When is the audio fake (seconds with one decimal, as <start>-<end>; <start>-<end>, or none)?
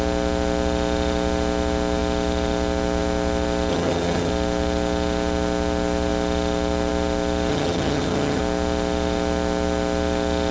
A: 3.7-4.3; 7.5-8.4